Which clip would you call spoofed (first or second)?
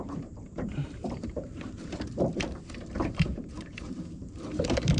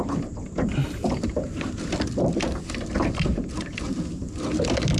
first